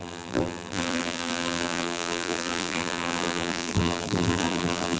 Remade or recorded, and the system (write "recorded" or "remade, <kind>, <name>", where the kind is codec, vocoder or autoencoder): remade, vocoder, BigVGAN v2